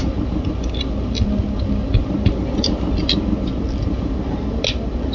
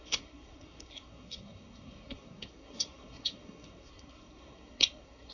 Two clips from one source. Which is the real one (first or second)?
first